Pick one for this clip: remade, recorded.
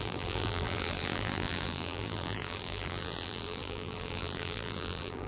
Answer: remade